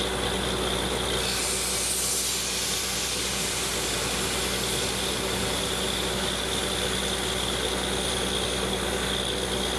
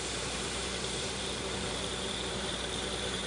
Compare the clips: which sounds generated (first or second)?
second